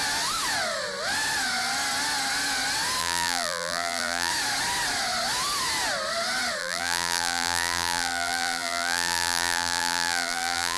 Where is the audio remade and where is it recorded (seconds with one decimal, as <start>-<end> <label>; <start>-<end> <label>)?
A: 0.0-3.0 recorded; 3.0-4.3 remade; 4.3-6.6 recorded; 6.6-10.8 remade